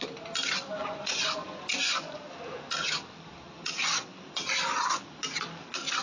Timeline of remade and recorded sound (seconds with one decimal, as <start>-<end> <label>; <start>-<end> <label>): 0.0-0.8 recorded; 0.8-2.2 remade; 2.2-6.0 recorded